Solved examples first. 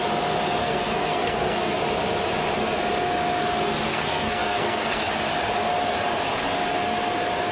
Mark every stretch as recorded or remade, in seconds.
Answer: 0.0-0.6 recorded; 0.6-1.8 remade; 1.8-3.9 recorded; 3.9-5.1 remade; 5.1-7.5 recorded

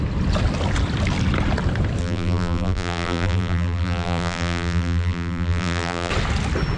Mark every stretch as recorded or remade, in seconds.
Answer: 0.0-2.0 recorded; 2.0-6.1 remade; 6.1-6.8 recorded